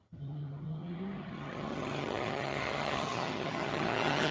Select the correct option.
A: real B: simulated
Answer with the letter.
B